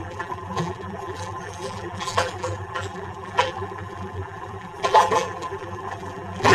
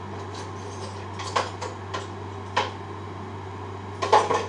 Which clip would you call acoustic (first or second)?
second